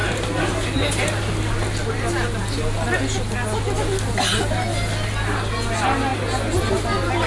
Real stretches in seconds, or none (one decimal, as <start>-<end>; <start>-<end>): 0.0-7.3